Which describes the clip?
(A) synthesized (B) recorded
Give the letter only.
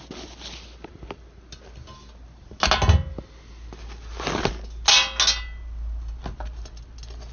B